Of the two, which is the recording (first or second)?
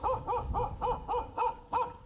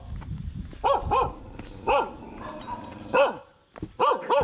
second